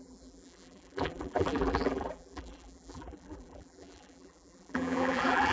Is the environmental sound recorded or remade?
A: remade